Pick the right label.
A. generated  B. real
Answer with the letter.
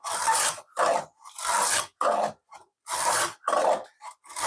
B